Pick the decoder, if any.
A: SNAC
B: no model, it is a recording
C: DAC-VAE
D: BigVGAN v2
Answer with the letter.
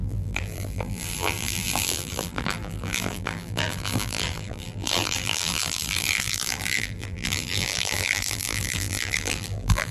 D